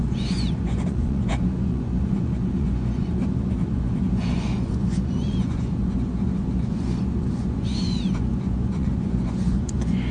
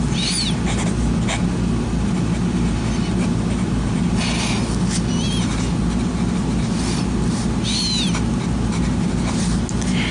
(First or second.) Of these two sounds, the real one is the second